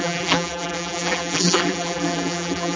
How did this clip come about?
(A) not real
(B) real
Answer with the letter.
A